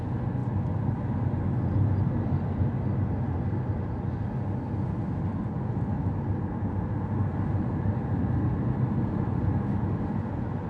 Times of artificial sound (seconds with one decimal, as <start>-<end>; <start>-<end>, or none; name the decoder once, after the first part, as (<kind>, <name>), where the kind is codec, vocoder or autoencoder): none